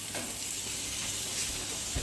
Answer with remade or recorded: recorded